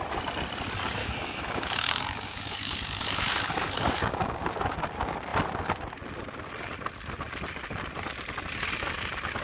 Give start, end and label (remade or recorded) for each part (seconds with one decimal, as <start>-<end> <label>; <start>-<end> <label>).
0.0-1.0 recorded; 1.0-4.4 remade; 4.4-9.4 recorded